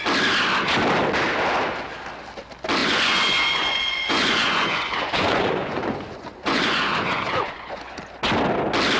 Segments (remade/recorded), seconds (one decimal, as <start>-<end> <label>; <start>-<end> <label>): 0.0-2.8 recorded; 2.8-8.0 remade; 8.0-9.0 recorded